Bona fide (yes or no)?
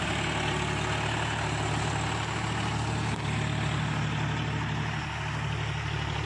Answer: yes